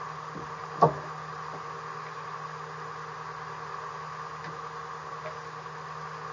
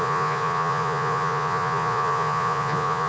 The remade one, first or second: second